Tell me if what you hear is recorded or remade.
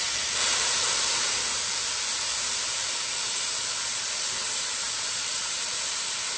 remade